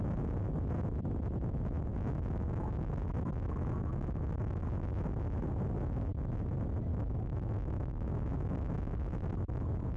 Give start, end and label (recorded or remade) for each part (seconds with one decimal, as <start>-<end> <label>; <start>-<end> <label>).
0.0-1.9 recorded; 1.9-4.6 remade; 4.6-6.9 recorded; 6.9-9.2 remade; 9.2-10.0 recorded